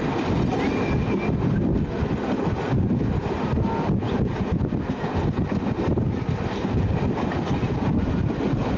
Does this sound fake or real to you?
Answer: real